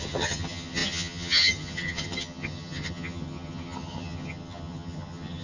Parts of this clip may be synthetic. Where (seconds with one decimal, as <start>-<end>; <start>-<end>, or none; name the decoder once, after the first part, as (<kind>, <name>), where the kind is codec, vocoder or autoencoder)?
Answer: 0.0-5.4 (vocoder, HiFi-GAN)